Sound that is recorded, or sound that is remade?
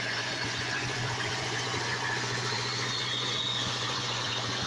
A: remade